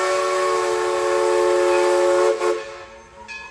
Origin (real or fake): real